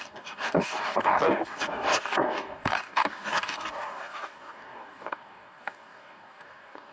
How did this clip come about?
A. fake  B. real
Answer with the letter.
A